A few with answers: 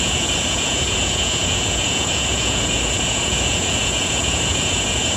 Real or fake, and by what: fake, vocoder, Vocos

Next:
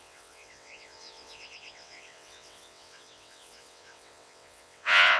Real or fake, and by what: fake, vocoder, WaveNeXt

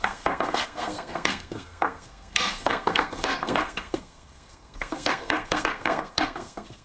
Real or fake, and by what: fake, codec, SNAC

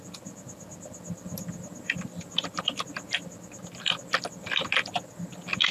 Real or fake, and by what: real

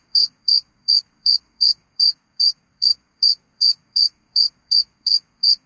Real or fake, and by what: fake, codec, SNAC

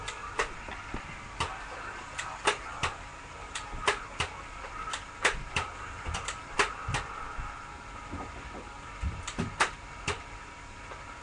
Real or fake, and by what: real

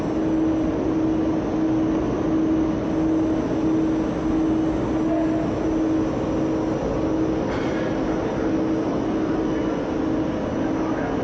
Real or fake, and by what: real